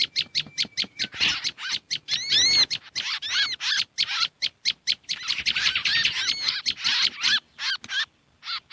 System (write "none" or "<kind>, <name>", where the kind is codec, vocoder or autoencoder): none